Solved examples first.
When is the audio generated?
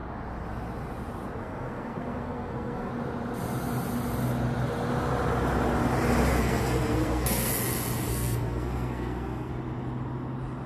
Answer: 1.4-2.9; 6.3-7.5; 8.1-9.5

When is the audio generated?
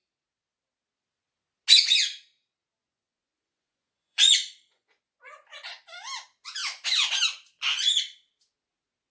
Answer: 2.8-5.8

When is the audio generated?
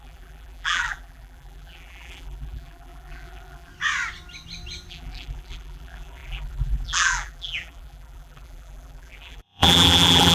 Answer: 0.0-3.7; 4.9-10.3